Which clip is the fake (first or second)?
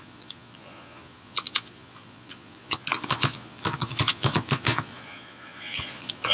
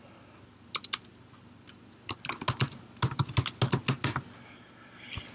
first